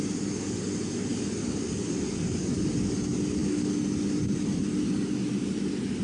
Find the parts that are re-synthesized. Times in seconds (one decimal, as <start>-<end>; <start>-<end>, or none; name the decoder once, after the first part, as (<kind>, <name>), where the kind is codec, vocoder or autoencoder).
none